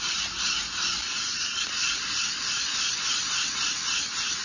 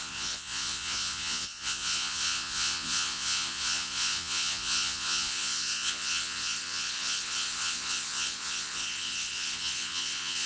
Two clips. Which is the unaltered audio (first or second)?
first